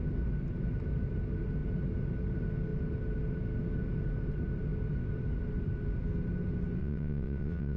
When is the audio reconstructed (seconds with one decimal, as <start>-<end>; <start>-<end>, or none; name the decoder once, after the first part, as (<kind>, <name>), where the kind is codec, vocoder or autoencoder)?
6.8-7.8 (vocoder, WaveNeXt)